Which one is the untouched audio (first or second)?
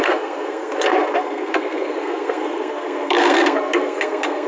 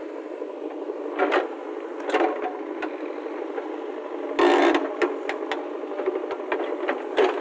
second